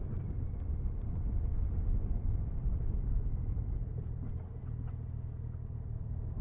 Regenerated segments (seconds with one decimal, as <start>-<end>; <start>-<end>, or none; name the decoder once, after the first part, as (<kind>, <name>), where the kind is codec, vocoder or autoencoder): none

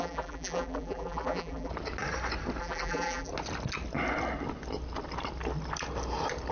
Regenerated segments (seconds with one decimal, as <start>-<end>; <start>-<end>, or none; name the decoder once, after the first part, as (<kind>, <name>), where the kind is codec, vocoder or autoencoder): 0.0-1.7 (vocoder, BigVGAN v2); 2.6-3.3

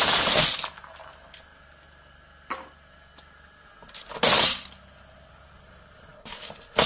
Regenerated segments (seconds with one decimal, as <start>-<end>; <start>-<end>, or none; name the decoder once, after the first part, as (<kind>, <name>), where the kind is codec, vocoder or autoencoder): 0.0-1.5 (vocoder, BigVGAN v2); 5.3-6.1

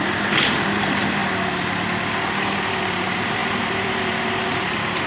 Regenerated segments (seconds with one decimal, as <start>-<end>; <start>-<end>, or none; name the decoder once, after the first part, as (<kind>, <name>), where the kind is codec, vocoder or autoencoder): 0.0-1.2 (vocoder, BigVGAN v2); 2.8-5.1

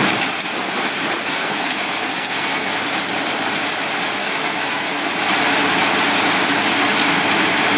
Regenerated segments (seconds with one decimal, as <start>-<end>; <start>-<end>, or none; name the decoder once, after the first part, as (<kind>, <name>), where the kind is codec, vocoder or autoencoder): 1.2-2.7 (codec, SNAC); 4.2-5.1

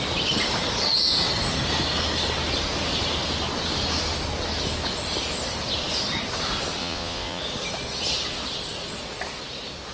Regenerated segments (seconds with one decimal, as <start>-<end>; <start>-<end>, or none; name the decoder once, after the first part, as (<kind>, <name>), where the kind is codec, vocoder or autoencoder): 6.8-7.4 (vocoder, Vocos)